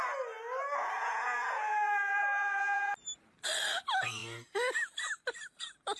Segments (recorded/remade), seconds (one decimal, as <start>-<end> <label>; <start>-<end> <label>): 0.0-1.0 recorded; 1.0-2.9 remade; 2.9-6.0 recorded